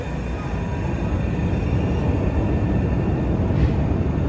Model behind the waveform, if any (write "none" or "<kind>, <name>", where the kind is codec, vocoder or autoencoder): none